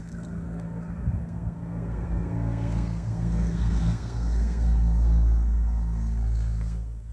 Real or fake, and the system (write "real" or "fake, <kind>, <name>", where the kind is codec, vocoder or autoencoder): fake, codec, SNAC